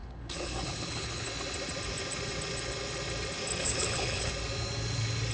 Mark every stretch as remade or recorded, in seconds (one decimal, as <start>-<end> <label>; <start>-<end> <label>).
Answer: 0.0-1.3 remade; 1.3-3.6 recorded; 3.6-4.3 remade; 4.3-5.3 recorded